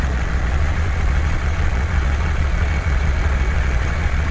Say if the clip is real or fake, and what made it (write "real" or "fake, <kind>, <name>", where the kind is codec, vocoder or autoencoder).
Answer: fake, vocoder, Vocos